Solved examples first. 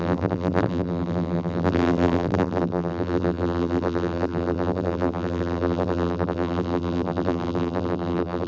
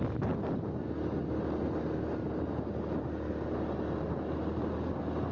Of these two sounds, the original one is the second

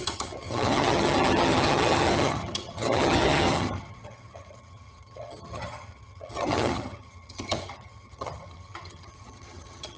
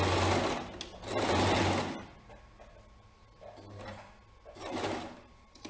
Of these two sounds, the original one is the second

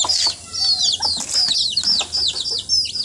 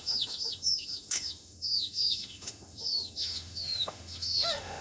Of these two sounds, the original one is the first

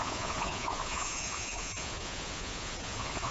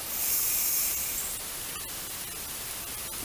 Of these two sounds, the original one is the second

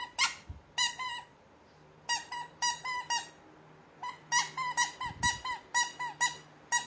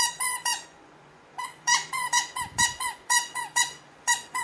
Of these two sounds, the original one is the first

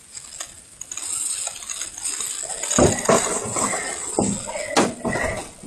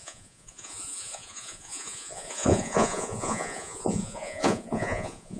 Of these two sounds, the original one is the first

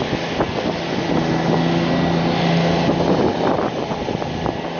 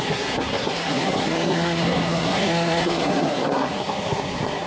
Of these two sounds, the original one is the first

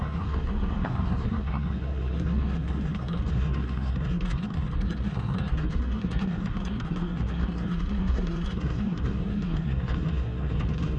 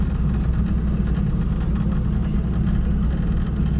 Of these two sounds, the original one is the second